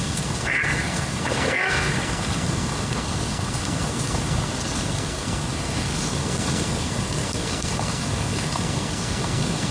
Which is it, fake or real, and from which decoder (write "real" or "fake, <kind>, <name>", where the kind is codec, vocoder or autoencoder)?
fake, codec, SNAC